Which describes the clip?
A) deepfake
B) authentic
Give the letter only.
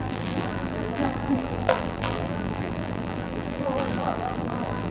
A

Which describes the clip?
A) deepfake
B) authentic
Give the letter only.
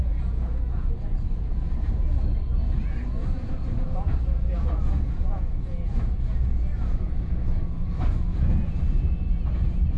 A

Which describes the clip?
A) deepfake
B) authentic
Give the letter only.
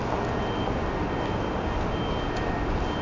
B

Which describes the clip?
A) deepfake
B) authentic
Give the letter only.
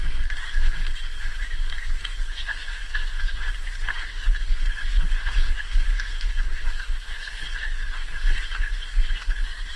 A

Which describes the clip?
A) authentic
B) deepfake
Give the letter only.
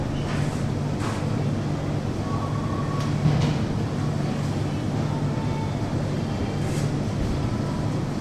A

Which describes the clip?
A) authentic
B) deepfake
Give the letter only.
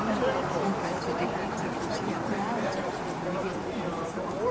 B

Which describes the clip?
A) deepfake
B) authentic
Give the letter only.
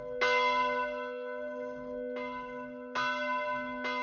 B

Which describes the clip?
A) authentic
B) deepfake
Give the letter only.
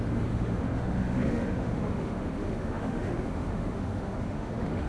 B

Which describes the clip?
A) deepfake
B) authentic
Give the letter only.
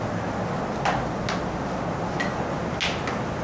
B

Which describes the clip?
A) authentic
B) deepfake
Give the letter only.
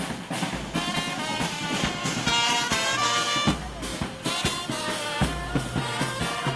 A